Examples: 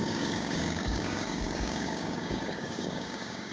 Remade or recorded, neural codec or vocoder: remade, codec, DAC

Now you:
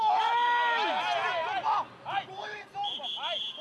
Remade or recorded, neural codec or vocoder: recorded